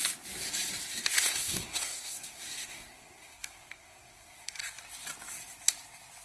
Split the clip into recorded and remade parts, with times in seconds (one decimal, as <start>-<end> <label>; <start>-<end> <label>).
0.0-0.9 recorded; 0.9-4.6 remade; 4.6-6.2 recorded